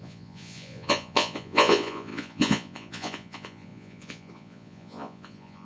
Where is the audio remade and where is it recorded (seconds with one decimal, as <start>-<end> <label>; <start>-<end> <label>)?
0.0-5.7 remade